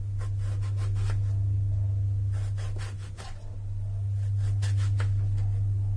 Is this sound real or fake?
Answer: real